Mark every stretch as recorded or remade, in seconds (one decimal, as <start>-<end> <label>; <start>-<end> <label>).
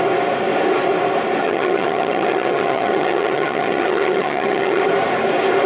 0.0-1.4 recorded; 1.4-4.8 remade; 4.8-5.7 recorded